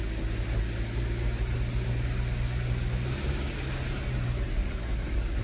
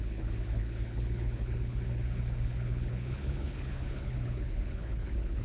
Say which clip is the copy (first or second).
second